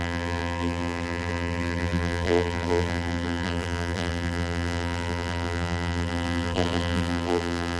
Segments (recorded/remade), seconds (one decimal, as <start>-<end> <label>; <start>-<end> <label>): 0.0-7.8 remade